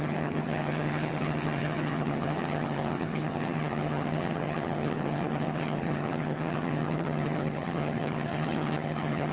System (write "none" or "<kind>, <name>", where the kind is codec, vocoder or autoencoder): vocoder, HiFi-GAN